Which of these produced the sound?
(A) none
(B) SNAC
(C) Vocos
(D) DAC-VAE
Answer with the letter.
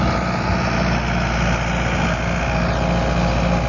A